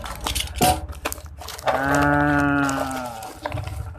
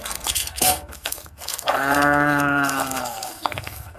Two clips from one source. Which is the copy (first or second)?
second